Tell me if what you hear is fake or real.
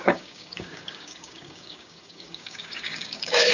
fake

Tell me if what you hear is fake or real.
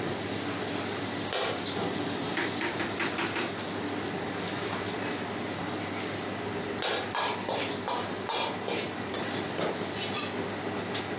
real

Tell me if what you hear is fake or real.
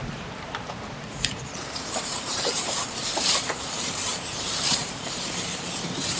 fake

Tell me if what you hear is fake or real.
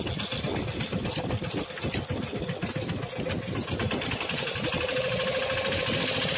real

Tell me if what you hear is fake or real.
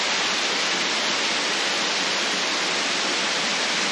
real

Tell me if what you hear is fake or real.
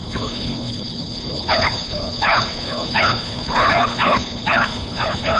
fake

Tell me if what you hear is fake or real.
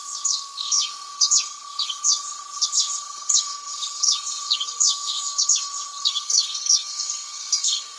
fake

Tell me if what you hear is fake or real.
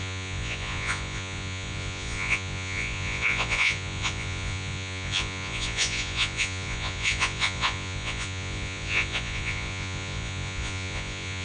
fake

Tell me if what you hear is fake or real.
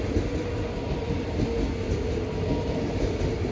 real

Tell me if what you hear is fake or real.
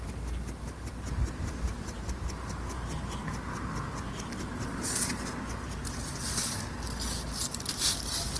fake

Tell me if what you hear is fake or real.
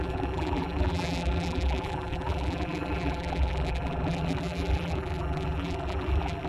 fake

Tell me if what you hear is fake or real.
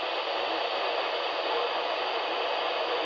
real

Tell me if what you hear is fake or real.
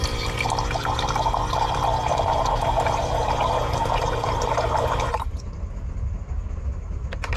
real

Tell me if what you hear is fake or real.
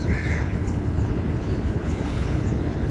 fake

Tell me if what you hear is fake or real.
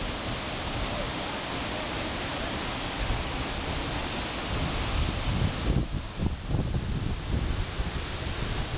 real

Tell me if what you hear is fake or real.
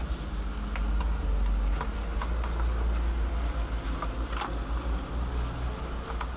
real